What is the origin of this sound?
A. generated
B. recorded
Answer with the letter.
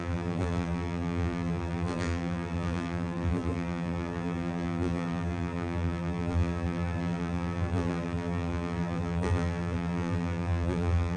A